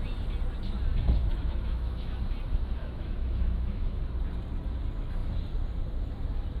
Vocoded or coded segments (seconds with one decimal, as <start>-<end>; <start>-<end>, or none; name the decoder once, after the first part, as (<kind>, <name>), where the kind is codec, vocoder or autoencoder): 1.2-2.2 (autoencoder, DAC-VAE); 2.8-4.0